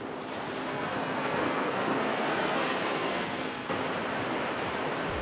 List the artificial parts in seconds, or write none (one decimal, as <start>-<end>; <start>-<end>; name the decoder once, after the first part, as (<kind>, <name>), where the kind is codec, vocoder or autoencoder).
0.7-3.8 (codec, SNAC)